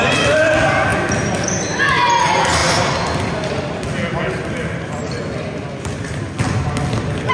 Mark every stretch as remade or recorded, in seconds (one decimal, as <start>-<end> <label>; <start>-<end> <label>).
0.0-7.3 recorded